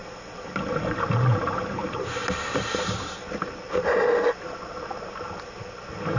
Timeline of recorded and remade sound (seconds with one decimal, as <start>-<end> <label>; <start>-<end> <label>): 0.0-6.2 recorded